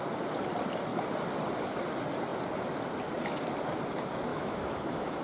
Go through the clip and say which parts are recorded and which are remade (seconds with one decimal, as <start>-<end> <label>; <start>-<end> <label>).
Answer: 0.0-4.3 recorded; 4.3-5.2 remade